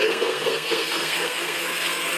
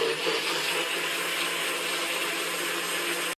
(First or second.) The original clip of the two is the second